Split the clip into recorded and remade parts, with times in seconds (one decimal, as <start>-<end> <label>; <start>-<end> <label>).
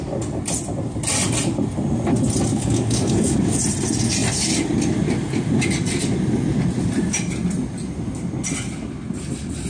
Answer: 0.0-2.5 recorded; 2.5-3.6 remade; 3.6-9.7 recorded